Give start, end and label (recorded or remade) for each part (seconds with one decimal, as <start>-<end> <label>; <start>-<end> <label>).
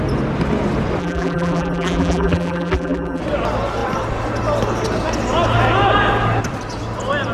0.0-1.0 recorded; 1.0-3.2 remade; 3.2-7.3 recorded